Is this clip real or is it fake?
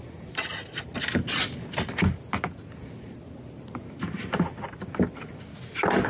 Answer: real